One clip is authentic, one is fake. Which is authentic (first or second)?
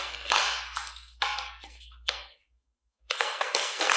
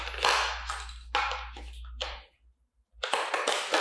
second